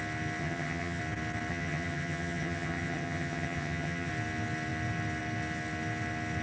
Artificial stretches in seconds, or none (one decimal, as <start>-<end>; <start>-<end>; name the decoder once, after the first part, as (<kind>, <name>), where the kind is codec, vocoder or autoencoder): 0.4-1.0 (vocoder, HiFi-GAN); 1.5-4.1